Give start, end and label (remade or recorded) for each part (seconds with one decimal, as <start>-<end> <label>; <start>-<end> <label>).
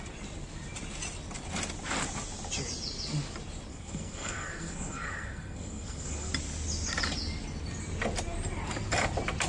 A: 0.0-3.7 recorded; 3.7-6.3 remade; 6.3-9.5 recorded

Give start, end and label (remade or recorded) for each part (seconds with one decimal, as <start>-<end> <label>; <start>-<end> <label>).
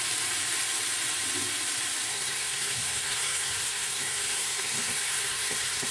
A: 0.0-2.1 recorded; 2.1-5.9 remade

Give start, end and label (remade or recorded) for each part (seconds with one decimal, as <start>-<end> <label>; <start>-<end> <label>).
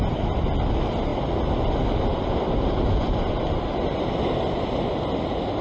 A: 0.0-5.6 recorded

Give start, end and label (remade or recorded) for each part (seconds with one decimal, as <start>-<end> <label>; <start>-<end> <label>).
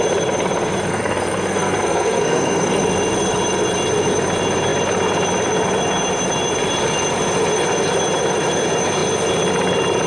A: 0.0-0.9 recorded; 0.9-2.8 remade; 2.8-10.1 recorded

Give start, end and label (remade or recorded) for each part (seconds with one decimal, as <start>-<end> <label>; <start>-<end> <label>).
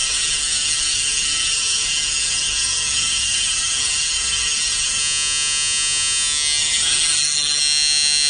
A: 0.0-5.0 remade; 5.0-6.6 recorded; 6.6-7.6 remade; 7.6-8.3 recorded